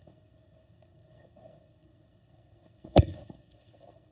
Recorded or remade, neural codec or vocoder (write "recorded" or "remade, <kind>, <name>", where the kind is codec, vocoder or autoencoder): remade, codec, SNAC